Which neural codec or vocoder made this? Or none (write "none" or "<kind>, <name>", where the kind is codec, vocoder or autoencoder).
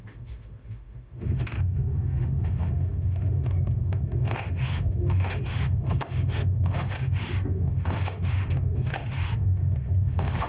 autoencoder, DAC-VAE